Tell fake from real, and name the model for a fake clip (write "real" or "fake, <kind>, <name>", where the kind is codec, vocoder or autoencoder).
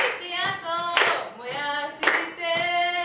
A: real